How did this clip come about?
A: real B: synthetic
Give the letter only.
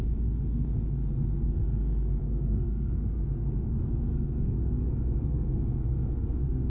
B